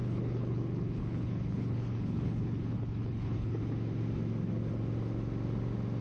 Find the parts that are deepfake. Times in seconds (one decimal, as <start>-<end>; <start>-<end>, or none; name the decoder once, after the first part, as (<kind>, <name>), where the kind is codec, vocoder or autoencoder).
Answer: 0.0-3.6 (codec, HILCodec)